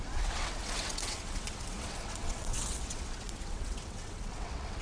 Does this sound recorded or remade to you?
remade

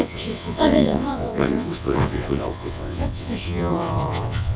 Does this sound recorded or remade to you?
remade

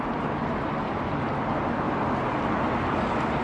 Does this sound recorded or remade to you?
recorded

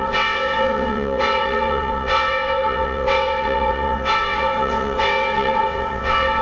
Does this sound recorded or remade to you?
remade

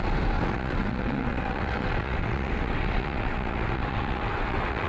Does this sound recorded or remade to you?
remade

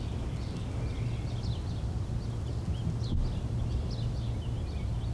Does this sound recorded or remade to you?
recorded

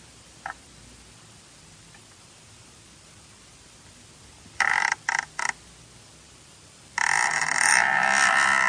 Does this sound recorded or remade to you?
recorded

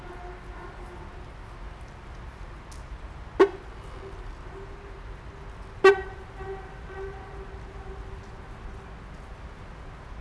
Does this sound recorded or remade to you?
recorded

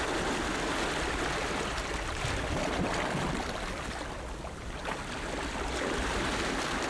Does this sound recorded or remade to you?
recorded